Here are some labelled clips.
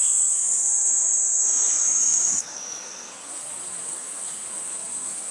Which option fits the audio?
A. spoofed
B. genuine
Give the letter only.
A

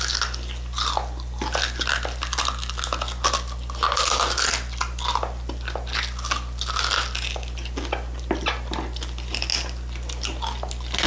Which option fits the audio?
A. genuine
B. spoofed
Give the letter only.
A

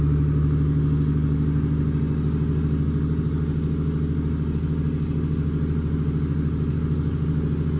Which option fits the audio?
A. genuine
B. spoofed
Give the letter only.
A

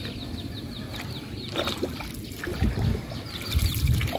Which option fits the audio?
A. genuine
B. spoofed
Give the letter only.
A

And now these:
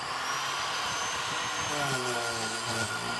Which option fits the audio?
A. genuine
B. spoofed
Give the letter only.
A